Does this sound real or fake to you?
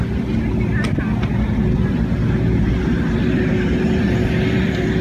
real